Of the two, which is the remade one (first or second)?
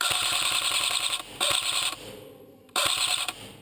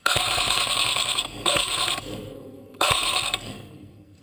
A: second